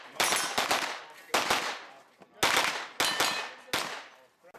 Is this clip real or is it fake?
real